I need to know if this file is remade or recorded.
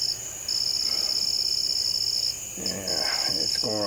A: recorded